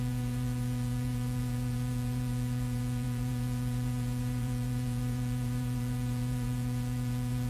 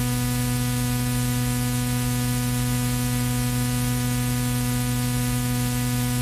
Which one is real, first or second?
second